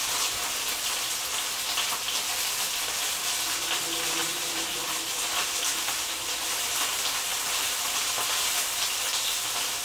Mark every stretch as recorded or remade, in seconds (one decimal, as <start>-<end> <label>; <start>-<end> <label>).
0.0-4.2 recorded; 4.2-6.3 remade; 6.3-7.3 recorded; 7.3-8.0 remade; 8.0-9.8 recorded